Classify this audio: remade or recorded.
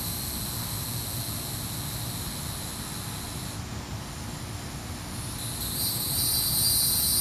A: recorded